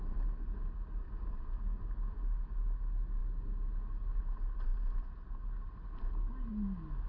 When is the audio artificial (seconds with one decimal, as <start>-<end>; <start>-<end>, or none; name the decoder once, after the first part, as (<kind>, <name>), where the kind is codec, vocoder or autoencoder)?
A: none